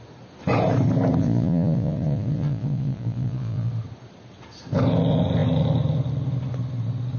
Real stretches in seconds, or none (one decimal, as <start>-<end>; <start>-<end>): 0.0-1.2; 3.7-7.2